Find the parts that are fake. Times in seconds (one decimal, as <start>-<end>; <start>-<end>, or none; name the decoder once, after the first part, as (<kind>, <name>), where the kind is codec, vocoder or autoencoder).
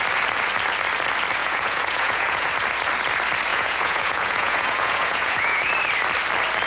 1.4-2.5 (vocoder, Vocos); 3.5-5.7